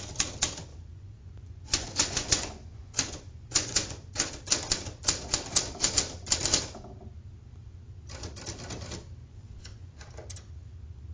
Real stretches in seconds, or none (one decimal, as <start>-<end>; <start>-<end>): 0.0-0.7; 4.1-9.2; 10.0-11.1